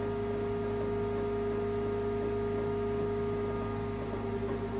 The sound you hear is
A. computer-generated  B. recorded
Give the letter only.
B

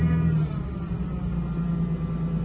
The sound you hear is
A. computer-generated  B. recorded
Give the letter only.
B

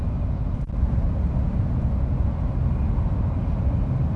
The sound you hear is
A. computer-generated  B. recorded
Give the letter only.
B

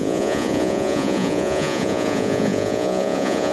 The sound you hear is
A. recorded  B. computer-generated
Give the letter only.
B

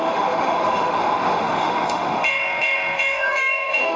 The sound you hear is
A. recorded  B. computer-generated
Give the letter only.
B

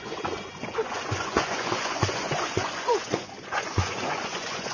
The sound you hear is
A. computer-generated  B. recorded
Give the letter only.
A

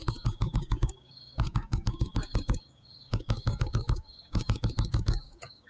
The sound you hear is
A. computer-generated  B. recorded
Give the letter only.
A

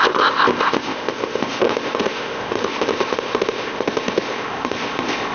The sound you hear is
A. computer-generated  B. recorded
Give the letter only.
A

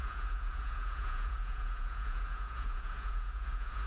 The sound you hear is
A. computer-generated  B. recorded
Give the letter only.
A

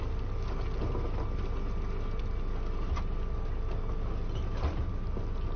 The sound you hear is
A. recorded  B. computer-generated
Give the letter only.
A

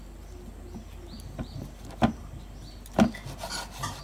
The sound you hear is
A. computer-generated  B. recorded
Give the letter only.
B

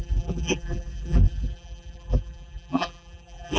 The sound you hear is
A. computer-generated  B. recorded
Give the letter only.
A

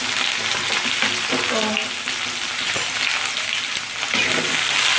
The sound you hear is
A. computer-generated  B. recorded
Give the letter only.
B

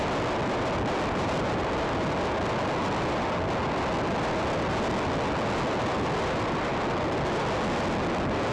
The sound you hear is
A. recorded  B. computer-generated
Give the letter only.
A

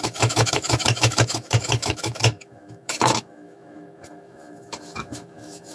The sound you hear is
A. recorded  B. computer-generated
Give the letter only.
B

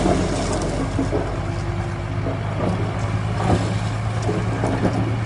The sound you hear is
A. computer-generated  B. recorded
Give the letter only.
B